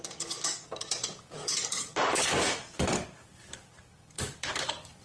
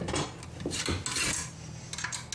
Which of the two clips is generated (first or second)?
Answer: first